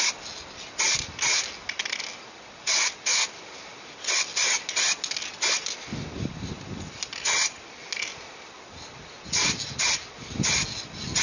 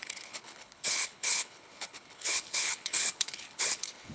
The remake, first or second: second